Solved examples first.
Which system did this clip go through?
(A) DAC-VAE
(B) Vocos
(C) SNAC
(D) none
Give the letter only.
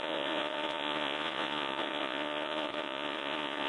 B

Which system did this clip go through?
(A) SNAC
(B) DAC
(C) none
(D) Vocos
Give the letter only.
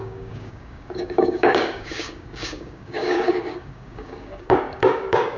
B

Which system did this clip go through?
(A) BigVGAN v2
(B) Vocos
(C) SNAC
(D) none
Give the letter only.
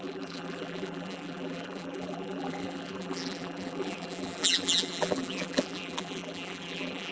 A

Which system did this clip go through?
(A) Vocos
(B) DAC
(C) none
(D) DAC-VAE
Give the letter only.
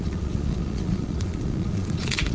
A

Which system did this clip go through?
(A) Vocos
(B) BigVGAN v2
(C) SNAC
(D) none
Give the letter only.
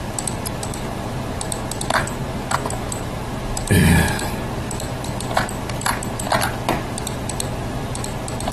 D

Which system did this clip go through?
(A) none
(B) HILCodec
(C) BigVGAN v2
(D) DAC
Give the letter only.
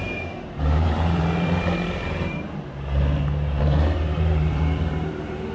C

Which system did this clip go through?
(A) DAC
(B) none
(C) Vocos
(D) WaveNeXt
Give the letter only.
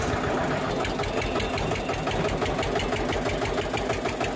B